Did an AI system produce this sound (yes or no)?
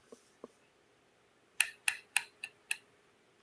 no